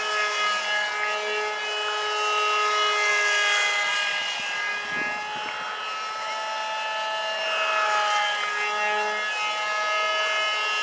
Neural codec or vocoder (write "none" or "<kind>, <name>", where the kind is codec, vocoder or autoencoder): none